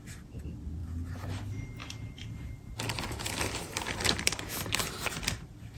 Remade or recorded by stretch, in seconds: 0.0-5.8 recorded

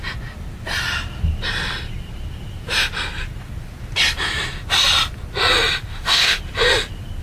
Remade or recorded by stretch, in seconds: 0.0-5.9 recorded; 5.9-6.4 remade; 6.4-7.2 recorded

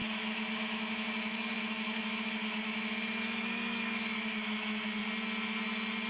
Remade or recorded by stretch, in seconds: 0.0-5.0 remade; 5.0-6.1 recorded

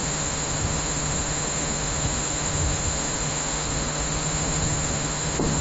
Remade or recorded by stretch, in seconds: 0.0-5.6 remade

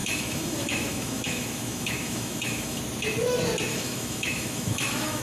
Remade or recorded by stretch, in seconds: 0.0-2.8 remade; 2.8-3.7 recorded; 3.7-5.2 remade